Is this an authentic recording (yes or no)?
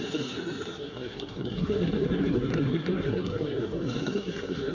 no